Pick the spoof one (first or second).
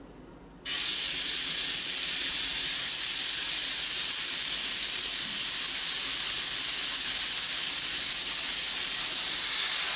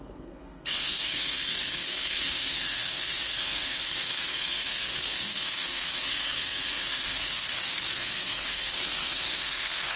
second